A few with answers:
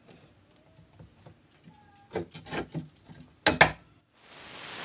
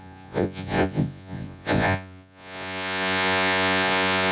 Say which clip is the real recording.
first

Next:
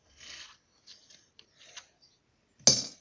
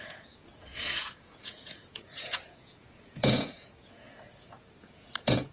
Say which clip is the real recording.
first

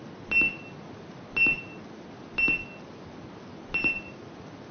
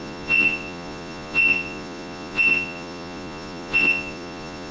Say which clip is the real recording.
first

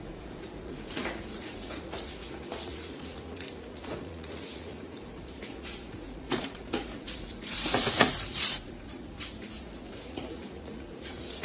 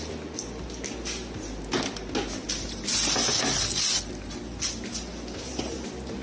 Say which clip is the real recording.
second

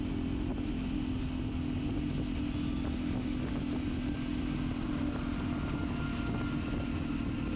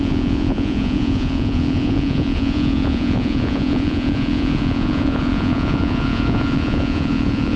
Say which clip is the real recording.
first